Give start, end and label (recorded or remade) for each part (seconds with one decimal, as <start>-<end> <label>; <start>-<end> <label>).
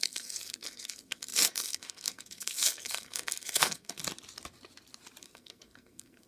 0.0-4.0 remade; 4.0-5.2 recorded; 5.2-6.3 remade